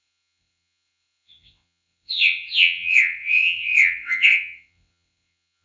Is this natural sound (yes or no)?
no